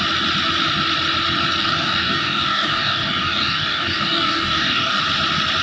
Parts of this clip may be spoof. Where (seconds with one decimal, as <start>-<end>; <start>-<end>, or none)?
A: 1.6-5.0

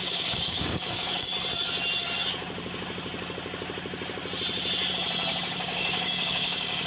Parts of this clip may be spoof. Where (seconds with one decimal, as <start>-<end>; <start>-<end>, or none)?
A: 0.0-1.3; 5.4-6.9

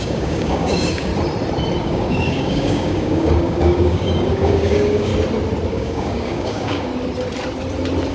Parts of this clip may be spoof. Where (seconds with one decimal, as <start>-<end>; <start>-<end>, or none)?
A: 0.0-1.1; 1.8-5.1; 5.7-6.9

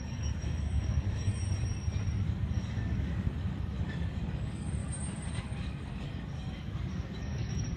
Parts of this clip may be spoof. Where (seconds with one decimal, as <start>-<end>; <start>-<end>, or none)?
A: 0.0-1.3; 2.2-4.8; 5.3-7.8

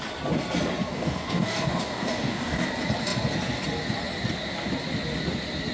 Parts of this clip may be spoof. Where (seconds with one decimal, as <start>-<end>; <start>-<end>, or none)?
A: 0.9-2.7

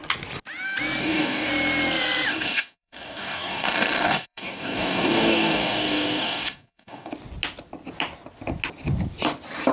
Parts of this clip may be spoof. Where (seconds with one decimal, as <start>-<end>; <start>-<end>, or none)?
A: 1.0-1.5; 2.3-7.1

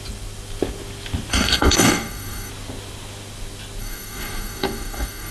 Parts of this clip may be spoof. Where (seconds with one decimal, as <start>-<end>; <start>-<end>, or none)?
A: 1.3-2.5; 3.8-5.3